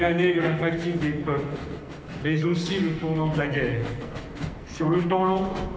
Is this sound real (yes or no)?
no